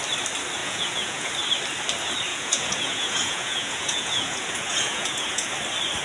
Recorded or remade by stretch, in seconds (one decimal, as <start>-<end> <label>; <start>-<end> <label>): 0.0-0.6 recorded; 0.6-1.3 remade; 1.3-2.3 recorded; 2.3-5.5 remade; 5.5-6.0 recorded